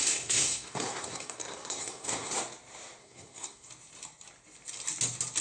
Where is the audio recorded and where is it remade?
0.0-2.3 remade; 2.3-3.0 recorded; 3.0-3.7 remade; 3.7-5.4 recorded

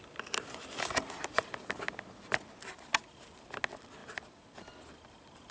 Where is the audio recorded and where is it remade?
0.0-5.5 recorded

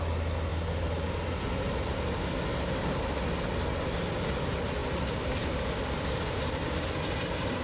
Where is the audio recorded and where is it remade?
0.0-4.8 recorded; 4.8-6.6 remade; 6.6-7.6 recorded

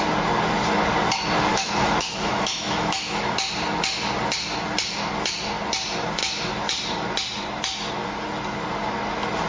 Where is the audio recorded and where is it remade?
0.0-1.5 recorded; 1.5-3.3 remade; 3.3-9.5 recorded

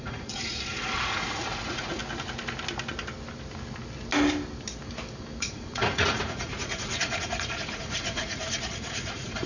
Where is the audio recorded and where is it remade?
0.0-2.0 remade; 2.0-5.4 recorded; 5.4-9.5 remade

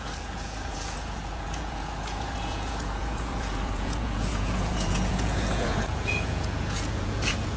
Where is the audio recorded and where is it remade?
0.0-7.6 remade

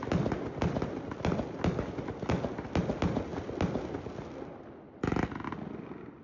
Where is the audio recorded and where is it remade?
0.0-6.2 recorded